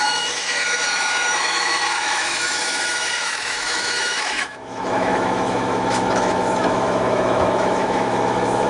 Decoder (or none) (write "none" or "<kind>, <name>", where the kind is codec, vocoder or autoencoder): autoencoder, DAC-VAE